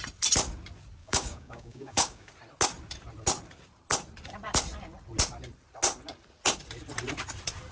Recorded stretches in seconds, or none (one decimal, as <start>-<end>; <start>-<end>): 0.0-1.0; 2.3-7.7